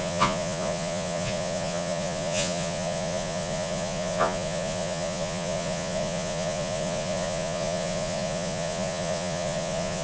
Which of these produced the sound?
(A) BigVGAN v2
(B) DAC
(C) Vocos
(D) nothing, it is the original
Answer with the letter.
C